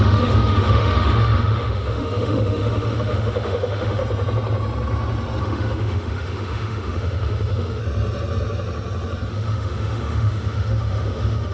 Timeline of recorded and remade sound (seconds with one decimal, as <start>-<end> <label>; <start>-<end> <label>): 0.0-4.0 remade; 4.0-5.4 recorded; 5.4-7.8 remade; 7.8-9.3 recorded; 9.3-11.5 remade